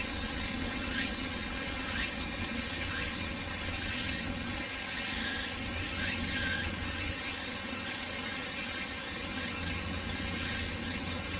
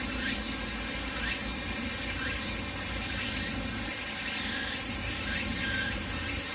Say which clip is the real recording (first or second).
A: second